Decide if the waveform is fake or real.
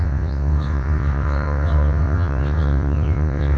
fake